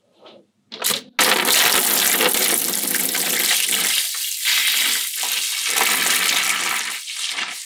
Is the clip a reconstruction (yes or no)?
no